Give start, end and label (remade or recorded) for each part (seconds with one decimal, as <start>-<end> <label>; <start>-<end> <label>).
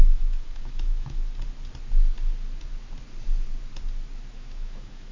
0.0-1.2 remade; 1.2-4.3 recorded; 4.3-5.1 remade